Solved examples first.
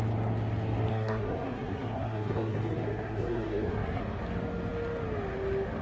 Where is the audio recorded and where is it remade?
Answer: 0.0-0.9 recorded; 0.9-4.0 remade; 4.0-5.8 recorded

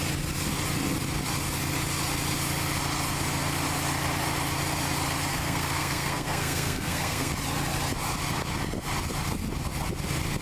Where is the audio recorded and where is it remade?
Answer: 0.0-5.3 recorded; 5.3-7.3 remade; 7.3-10.4 recorded

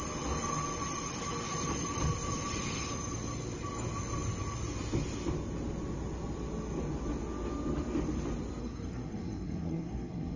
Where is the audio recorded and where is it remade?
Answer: 0.0-8.6 recorded; 8.6-10.4 remade

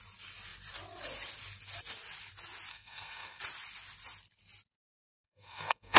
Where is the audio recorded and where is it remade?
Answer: 0.0-2.7 recorded; 2.7-3.4 remade; 3.4-5.1 recorded; 5.1-6.0 remade